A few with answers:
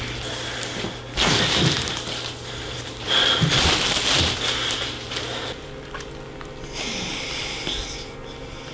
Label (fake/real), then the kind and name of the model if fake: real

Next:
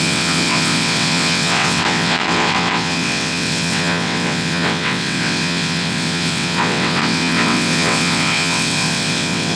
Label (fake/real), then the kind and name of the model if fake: fake, vocoder, WaveNeXt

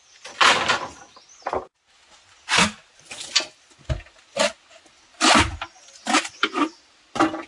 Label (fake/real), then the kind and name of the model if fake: real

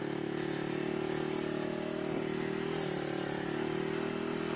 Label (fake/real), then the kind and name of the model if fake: real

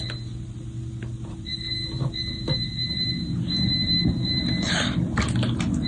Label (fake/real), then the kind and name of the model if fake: real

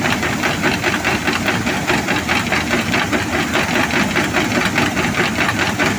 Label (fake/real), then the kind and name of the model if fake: real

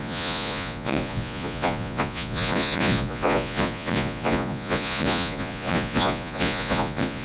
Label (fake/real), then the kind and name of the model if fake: fake, vocoder, Vocos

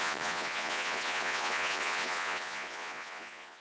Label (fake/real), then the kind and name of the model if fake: fake, vocoder, Vocos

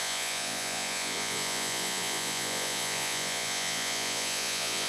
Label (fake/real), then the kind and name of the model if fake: fake, vocoder, Vocos